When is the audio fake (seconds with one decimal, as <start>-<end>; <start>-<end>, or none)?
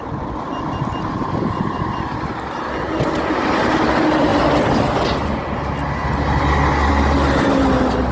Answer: none